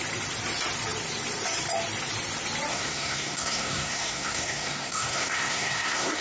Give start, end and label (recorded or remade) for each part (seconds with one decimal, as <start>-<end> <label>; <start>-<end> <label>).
0.0-2.7 recorded; 2.7-6.2 remade